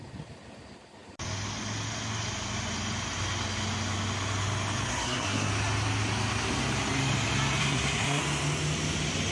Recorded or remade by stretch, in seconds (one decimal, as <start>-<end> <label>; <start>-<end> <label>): 0.0-4.9 recorded; 4.9-5.5 remade; 5.5-7.6 recorded; 7.6-8.2 remade; 8.2-9.3 recorded